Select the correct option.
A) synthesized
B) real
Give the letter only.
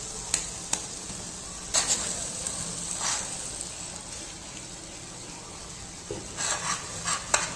B